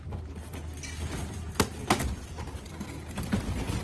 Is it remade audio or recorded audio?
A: recorded